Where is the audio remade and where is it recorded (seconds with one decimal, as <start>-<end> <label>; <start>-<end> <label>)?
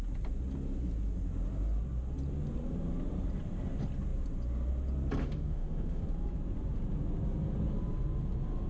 0.0-5.2 recorded; 5.2-6.0 remade; 6.0-8.7 recorded